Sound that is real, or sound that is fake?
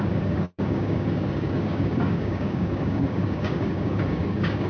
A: fake